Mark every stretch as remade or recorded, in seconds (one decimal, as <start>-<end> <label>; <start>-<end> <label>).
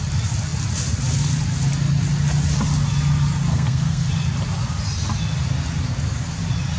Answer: 0.0-3.5 recorded; 3.5-4.1 remade; 4.1-6.8 recorded